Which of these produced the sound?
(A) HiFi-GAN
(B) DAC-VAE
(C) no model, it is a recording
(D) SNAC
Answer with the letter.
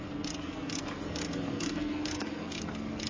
D